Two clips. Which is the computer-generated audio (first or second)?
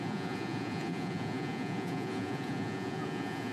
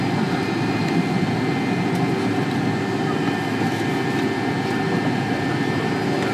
first